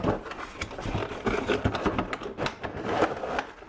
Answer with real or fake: real